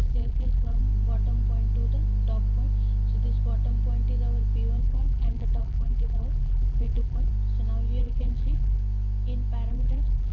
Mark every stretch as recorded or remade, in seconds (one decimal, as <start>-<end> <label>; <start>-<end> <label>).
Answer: 0.0-0.8 remade; 0.8-4.8 recorded; 4.8-7.3 remade; 7.3-8.0 recorded; 8.0-8.8 remade; 8.8-9.7 recorded; 9.7-10.3 remade

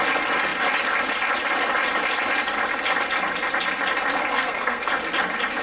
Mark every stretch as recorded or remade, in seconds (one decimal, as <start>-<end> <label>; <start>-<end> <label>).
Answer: 0.0-4.3 recorded; 4.3-4.9 remade; 4.9-5.6 recorded

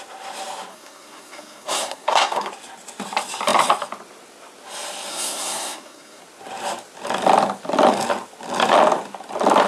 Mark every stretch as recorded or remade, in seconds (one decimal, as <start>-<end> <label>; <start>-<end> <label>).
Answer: 0.0-0.7 recorded; 0.7-2.5 remade; 2.5-5.1 recorded; 5.1-6.2 remade; 6.2-9.7 recorded

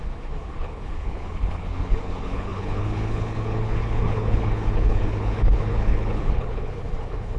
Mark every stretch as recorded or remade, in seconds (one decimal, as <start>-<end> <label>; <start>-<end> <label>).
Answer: 0.0-7.4 remade

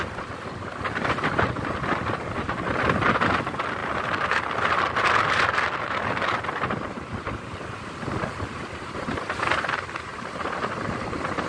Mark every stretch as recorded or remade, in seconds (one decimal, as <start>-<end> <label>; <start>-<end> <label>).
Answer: 0.0-11.5 recorded